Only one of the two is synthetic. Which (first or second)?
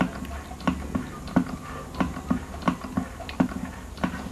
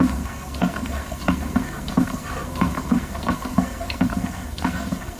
second